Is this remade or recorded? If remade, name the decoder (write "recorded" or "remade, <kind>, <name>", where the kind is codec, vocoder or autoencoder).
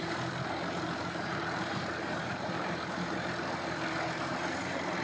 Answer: remade, vocoder, BigVGAN v2